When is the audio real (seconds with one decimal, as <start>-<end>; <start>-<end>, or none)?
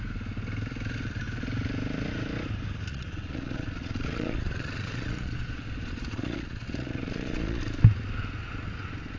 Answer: 0.0-2.9; 7.6-9.2